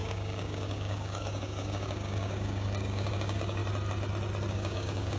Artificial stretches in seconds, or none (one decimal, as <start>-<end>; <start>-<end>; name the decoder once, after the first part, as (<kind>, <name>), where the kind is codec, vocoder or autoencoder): 0.0-3.6 (codec, DAC); 4.5-5.2